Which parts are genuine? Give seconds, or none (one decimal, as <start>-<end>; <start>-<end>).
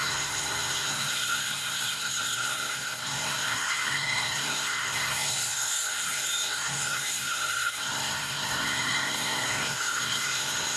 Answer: none